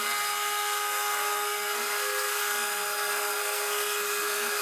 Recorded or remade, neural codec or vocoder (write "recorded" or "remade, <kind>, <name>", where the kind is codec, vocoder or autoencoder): remade, codec, SNAC